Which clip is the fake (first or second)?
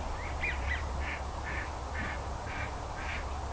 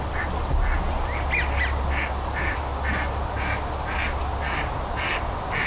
first